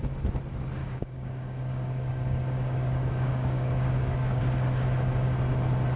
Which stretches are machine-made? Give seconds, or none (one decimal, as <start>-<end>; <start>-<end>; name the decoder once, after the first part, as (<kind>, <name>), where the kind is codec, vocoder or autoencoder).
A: 0.8-4.4 (codec, DAC)